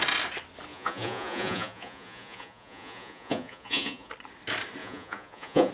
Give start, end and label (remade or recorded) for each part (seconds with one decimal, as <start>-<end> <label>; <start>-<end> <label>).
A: 0.0-0.7 recorded; 0.7-4.1 remade; 4.1-4.8 recorded; 4.8-5.7 remade